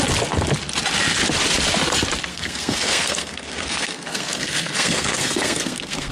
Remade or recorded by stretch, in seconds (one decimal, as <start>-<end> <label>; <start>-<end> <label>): 0.0-2.3 recorded; 2.3-6.1 remade